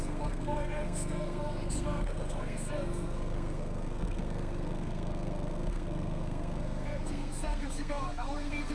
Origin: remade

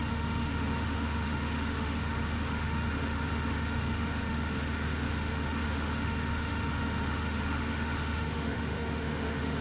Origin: remade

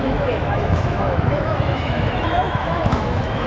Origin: remade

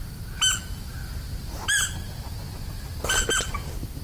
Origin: recorded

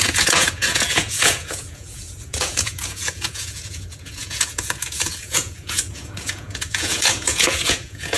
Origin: remade